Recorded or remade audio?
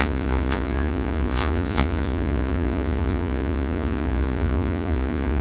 remade